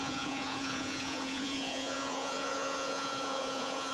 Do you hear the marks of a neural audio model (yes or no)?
yes